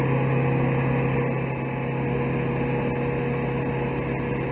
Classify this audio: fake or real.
real